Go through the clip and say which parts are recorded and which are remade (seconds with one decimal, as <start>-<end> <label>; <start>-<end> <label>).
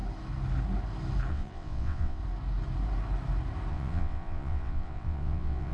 0.0-1.3 recorded; 1.3-2.2 remade; 2.2-3.7 recorded; 3.7-5.7 remade